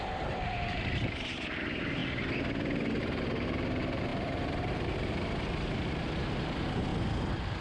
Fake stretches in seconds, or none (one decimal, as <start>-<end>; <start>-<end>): 0.0-2.0; 3.0-6.9